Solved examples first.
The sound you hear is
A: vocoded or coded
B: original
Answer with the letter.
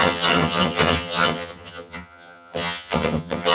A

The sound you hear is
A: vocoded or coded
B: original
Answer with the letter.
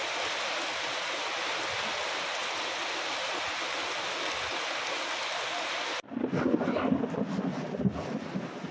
B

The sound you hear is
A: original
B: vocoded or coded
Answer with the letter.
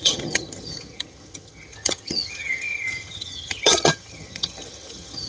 B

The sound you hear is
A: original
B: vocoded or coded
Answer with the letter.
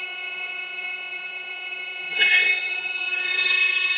B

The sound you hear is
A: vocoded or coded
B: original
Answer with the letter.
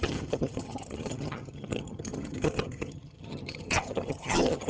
A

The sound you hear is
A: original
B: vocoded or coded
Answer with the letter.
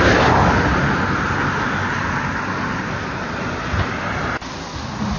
A